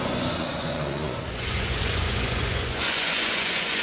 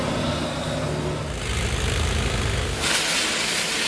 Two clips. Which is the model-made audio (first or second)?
first